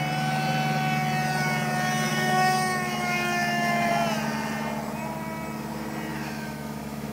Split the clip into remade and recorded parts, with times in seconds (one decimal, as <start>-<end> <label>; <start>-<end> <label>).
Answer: 0.0-2.1 recorded; 2.1-3.9 remade; 3.9-6.1 recorded; 6.1-7.1 remade